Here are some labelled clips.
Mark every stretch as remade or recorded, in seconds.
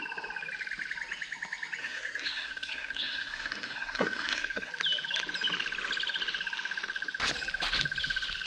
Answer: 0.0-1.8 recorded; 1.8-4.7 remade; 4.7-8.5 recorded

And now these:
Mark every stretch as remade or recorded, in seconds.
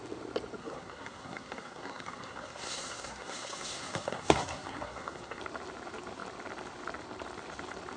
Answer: 0.0-0.6 recorded; 0.6-5.4 remade; 5.4-8.0 recorded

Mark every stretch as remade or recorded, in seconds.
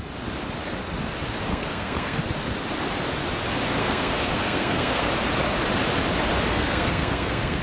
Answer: 0.0-1.5 recorded; 1.5-2.2 remade; 2.2-3.8 recorded; 3.8-5.1 remade; 5.1-6.5 recorded; 6.5-7.6 remade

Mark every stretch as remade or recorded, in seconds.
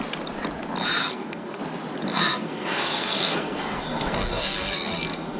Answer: 0.0-1.0 recorded; 1.0-1.6 remade; 1.6-2.1 recorded; 2.1-5.4 remade